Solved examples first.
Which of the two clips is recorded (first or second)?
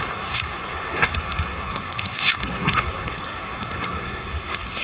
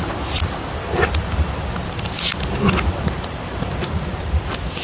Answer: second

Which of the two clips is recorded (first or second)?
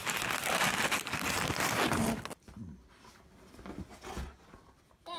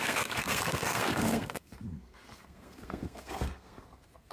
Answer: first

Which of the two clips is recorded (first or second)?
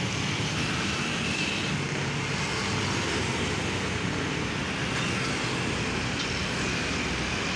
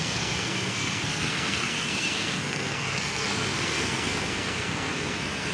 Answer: first